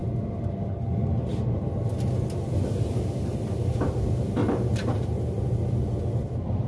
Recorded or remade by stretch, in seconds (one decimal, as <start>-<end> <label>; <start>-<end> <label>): 0.0-4.4 recorded; 4.4-5.3 remade; 5.3-6.7 recorded